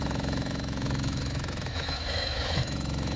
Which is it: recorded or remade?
remade